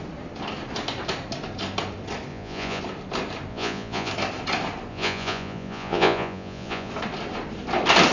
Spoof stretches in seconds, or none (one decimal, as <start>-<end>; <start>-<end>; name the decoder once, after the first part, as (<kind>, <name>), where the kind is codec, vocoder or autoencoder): 2.3-2.8 (vocoder, Vocos); 3.5-4.1; 4.9-6.9